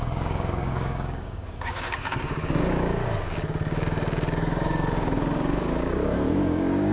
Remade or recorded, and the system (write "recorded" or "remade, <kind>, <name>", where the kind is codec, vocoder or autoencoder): remade, codec, DAC